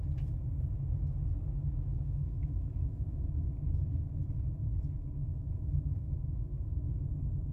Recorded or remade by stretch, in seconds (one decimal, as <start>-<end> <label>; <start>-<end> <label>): 0.0-1.6 recorded; 1.6-3.5 remade; 3.5-5.2 recorded; 5.2-6.9 remade; 6.9-7.5 recorded